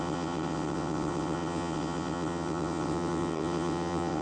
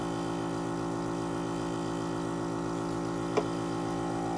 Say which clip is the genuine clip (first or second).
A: second